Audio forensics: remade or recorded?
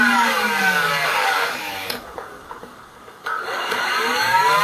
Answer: remade